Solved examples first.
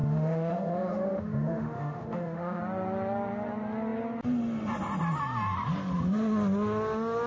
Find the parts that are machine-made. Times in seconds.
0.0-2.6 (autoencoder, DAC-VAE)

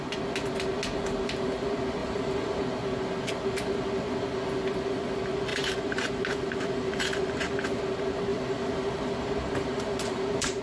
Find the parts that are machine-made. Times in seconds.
2.0-2.6 (vocoder, BigVGAN v2); 5.5-7.8; 8.3-10.6

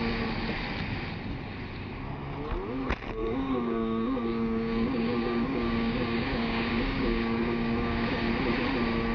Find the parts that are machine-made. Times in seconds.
3.2-8.3 (codec, DAC)

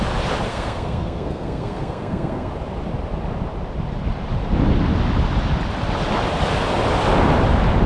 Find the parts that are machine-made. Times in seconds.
0.5-2.5 (codec, SNAC)

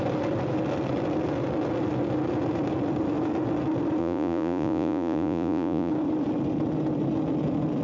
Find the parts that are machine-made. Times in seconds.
4.0-5.9 (vocoder, Vocos)

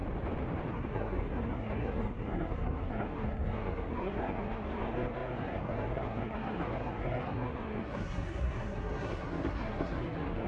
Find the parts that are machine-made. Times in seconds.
0.7-10.5 (codec, SNAC)

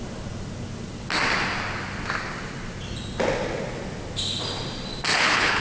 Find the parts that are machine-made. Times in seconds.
5.1-5.6 (codec, HILCodec)

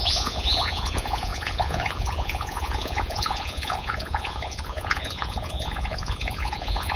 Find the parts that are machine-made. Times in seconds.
0.0-7.0 (vocoder, Vocos)